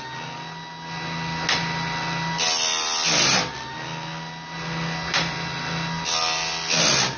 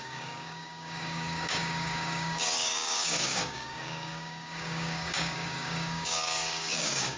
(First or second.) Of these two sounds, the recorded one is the first